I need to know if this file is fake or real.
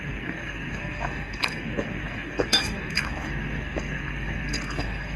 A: fake